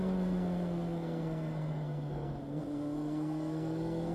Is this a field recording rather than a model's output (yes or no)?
no